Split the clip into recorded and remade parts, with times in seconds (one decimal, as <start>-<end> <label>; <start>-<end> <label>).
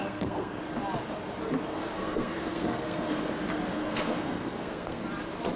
0.0-0.6 remade; 0.6-1.7 recorded; 1.7-3.3 remade; 3.3-3.7 recorded; 3.7-5.0 remade; 5.0-5.6 recorded